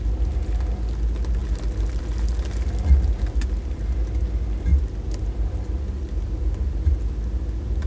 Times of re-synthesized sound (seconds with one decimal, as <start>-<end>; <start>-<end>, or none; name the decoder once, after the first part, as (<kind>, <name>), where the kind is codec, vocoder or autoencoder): none